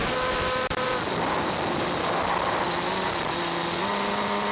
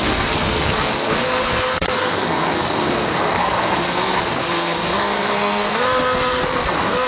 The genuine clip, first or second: first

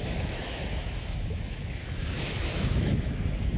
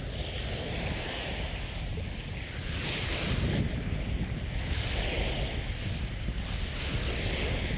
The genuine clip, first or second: second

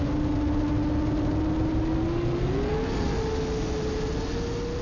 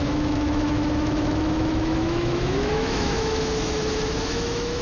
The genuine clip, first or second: first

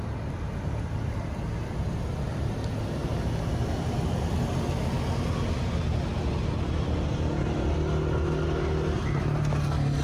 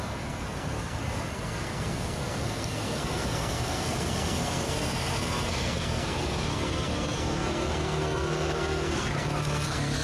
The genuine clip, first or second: first